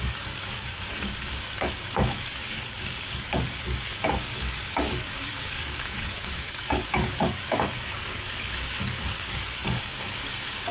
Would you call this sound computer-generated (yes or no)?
yes